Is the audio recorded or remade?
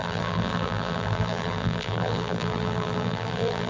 remade